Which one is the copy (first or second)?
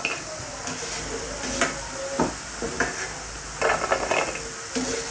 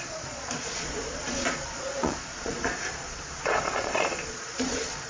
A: second